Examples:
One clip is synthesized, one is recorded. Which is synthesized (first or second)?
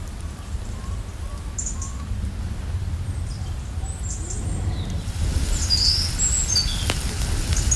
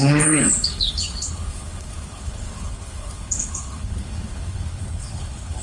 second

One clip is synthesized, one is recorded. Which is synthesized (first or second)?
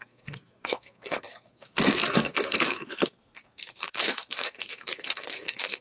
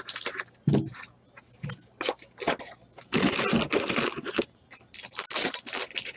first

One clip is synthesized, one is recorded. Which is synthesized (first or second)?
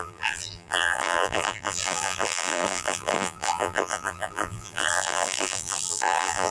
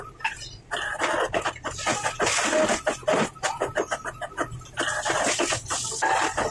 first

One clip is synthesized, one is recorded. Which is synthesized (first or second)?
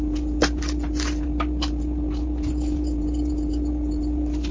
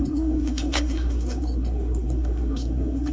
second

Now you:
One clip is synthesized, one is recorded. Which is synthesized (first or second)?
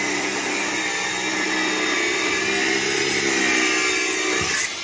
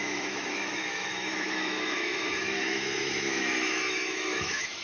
second